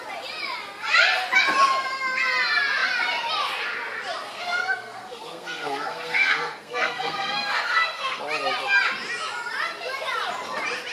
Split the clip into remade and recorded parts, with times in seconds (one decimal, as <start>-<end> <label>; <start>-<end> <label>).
0.0-4.3 recorded; 4.3-8.2 remade; 8.2-10.9 recorded